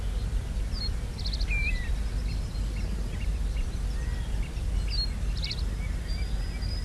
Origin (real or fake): real